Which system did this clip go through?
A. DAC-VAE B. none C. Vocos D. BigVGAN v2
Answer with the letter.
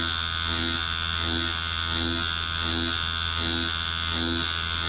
B